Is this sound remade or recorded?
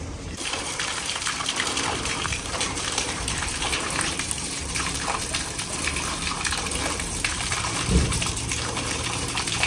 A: remade